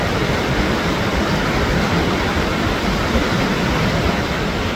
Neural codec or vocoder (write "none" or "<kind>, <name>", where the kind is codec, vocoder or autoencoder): vocoder, BigVGAN v2